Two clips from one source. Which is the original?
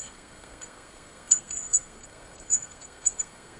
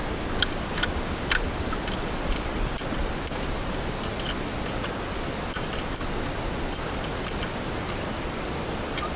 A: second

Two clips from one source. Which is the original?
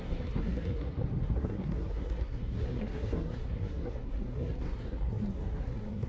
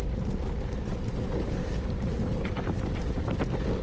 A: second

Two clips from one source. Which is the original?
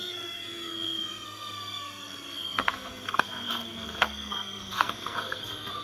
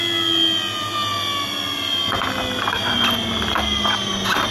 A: second